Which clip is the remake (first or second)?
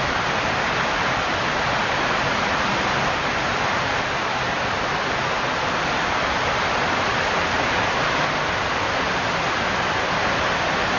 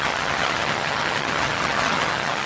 second